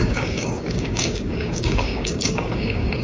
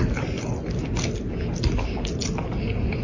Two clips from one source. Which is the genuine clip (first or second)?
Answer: second